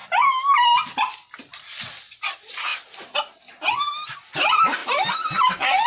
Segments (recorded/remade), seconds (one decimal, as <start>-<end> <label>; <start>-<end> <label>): 0.0-0.8 remade; 0.8-5.9 recorded